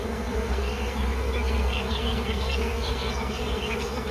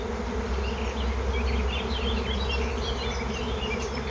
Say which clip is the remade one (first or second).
first